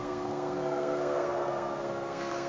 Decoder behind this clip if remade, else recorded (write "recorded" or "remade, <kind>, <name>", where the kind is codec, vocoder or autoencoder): remade, codec, SNAC